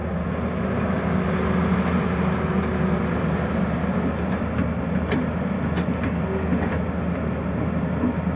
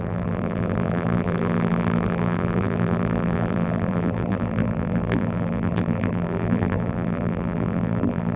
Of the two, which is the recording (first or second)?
first